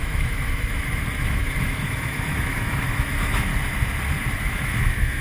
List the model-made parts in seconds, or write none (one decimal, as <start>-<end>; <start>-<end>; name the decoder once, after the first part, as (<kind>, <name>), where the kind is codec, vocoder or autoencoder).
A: 0.0-3.5 (autoencoder, DAC-VAE); 4.3-5.2